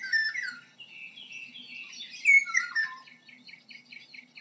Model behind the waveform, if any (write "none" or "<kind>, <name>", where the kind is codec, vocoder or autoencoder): none